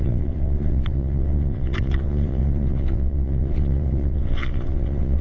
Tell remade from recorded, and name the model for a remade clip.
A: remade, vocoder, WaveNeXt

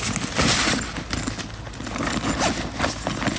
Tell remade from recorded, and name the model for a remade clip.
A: recorded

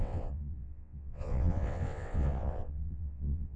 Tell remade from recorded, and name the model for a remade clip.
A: remade, vocoder, WaveNeXt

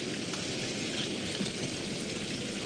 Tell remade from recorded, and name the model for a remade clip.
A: recorded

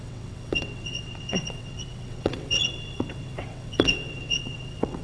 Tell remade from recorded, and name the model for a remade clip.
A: remade, vocoder, WaveNeXt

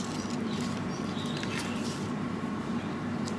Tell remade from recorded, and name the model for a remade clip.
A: recorded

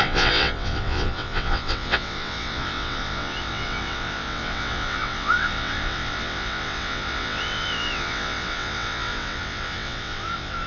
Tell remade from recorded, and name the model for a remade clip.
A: remade, vocoder, WaveNeXt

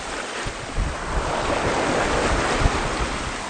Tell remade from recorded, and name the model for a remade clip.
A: recorded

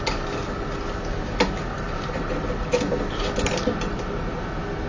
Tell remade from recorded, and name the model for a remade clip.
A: recorded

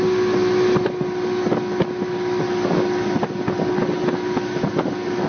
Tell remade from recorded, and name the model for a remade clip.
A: recorded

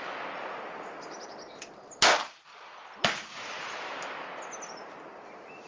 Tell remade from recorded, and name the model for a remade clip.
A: recorded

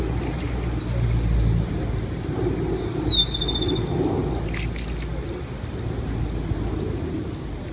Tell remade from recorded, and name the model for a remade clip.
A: recorded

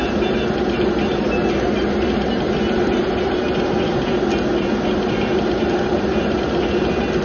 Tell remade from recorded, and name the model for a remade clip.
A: recorded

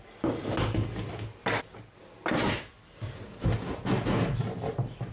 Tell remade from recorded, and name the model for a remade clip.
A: recorded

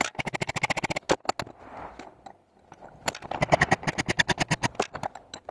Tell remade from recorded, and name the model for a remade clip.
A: recorded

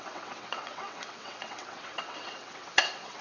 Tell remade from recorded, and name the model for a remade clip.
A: remade, vocoder, WaveNeXt